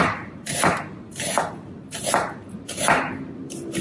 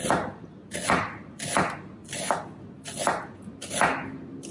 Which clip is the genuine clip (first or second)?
second